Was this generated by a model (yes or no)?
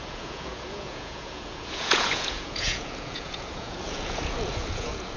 yes